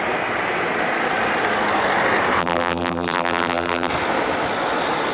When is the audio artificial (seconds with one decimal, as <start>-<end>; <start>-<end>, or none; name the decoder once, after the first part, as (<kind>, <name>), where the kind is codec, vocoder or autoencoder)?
2.4-3.9 (vocoder, BigVGAN v2)